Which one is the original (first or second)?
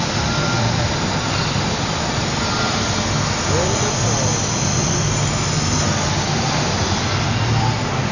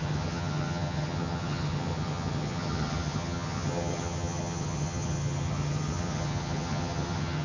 first